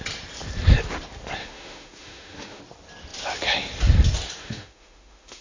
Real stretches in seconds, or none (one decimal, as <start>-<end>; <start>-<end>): 0.0-1.4; 2.6-4.4